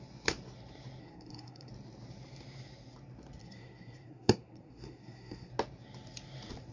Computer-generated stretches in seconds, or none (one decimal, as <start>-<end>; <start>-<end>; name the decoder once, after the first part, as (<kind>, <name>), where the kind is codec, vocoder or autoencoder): 1.0-1.7 (codec, SNAC); 3.4-5.5